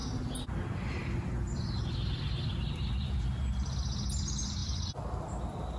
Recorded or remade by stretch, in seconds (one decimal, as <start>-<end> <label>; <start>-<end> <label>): 0.0-5.8 recorded